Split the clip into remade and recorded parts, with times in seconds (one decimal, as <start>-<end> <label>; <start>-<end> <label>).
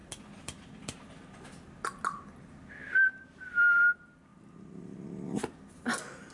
0.0-6.3 recorded